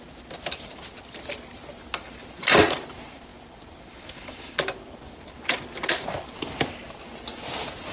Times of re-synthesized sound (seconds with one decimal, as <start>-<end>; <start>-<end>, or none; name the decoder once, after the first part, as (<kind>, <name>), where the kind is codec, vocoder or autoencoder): none

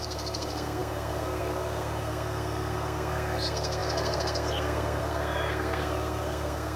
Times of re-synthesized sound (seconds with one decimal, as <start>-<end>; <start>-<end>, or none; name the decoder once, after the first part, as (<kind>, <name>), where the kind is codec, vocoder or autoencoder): 0.0-6.8 (codec, SNAC)

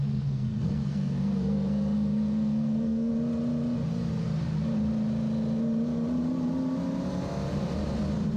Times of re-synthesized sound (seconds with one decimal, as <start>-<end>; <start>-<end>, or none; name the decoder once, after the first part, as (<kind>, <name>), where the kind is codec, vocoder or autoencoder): 0.0-3.1 (codec, SNAC)

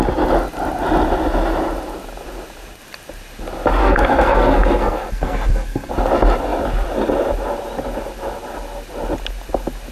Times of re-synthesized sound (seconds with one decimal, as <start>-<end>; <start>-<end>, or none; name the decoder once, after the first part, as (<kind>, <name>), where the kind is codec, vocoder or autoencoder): 3.8-5.9 (codec, SNAC)

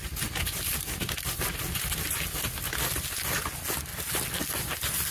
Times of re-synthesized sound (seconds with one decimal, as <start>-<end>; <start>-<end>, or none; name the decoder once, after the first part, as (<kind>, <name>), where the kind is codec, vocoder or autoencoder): none